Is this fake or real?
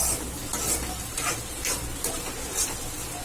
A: real